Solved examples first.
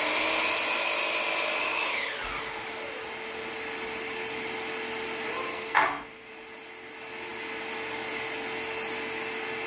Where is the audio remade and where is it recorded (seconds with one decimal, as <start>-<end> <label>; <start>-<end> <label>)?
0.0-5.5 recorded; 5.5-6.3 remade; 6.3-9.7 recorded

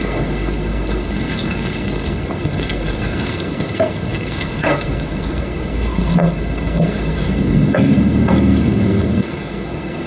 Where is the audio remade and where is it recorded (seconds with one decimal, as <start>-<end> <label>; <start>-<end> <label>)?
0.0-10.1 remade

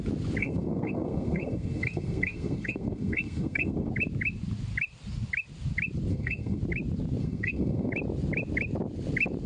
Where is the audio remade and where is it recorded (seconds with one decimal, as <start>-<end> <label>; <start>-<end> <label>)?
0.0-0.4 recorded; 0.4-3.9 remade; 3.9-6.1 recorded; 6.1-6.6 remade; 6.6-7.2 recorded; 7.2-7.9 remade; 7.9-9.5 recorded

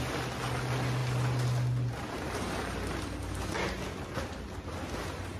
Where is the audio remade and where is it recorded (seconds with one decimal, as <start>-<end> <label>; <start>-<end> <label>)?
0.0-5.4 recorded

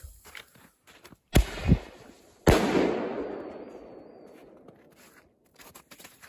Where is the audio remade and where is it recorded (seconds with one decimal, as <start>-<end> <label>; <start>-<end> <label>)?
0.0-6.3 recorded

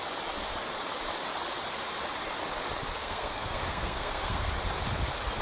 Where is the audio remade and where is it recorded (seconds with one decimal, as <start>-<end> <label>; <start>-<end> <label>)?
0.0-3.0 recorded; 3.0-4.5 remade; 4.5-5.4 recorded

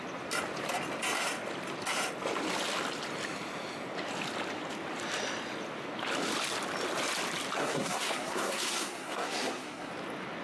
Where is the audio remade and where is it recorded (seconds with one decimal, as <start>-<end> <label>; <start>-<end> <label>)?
0.0-7.6 recorded; 7.6-9.9 remade; 9.9-10.4 recorded